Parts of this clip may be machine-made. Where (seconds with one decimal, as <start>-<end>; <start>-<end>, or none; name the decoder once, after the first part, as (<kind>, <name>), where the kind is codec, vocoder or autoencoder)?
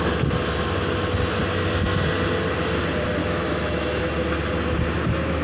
3.2-4.0 (autoencoder, DAC-VAE)